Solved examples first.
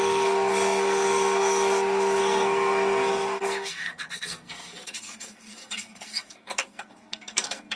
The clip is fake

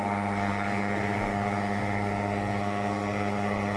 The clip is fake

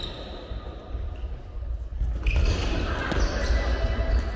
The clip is real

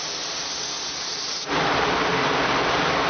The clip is real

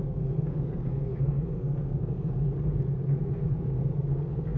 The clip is fake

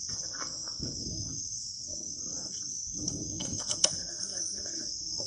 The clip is fake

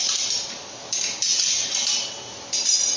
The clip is real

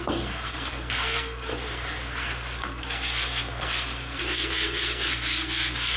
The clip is fake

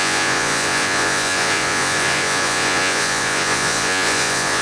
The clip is fake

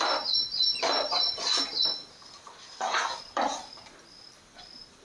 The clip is real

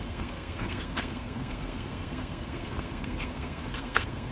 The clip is fake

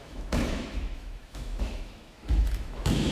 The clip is fake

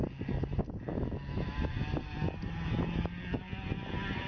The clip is real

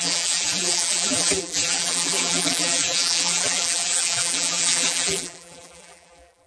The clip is fake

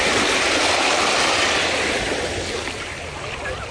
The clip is real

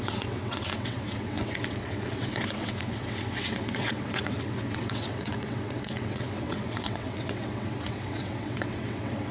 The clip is fake